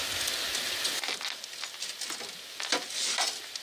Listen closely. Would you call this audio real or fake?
real